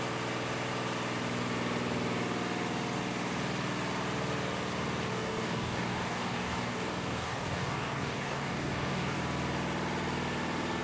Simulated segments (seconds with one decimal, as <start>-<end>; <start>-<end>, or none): 5.1-9.2